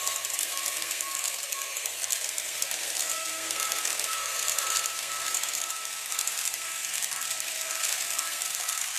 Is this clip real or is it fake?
fake